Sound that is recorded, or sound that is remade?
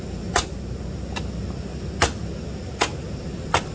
recorded